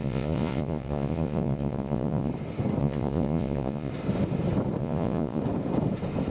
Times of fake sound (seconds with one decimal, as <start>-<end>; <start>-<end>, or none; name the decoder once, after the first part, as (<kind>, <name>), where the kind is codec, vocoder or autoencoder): 0.0-2.3 (vocoder, Vocos); 2.8-3.9; 4.8-5.4